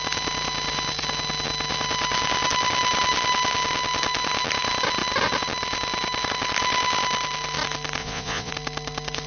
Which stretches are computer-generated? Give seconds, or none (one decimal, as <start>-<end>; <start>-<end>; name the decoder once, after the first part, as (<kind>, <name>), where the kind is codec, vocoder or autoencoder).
8.0-8.5 (vocoder, Vocos)